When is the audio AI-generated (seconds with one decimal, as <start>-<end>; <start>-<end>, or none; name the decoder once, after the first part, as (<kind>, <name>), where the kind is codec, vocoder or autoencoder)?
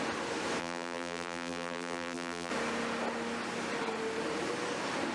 0.6-2.5 (vocoder, BigVGAN v2)